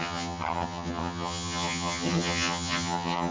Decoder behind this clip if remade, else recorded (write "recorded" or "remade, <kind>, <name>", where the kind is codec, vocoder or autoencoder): remade, vocoder, HiFi-GAN